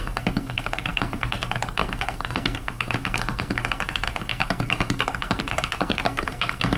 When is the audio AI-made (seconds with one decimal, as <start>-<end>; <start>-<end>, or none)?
0.0-6.8